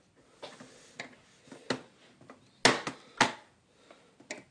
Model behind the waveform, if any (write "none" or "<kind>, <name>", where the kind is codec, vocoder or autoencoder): none